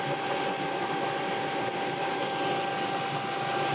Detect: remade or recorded recorded